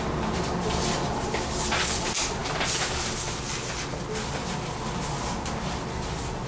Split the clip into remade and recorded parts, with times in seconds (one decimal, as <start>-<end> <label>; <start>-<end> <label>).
0.0-6.5 recorded